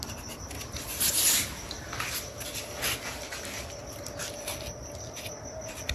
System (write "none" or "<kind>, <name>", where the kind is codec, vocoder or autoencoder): none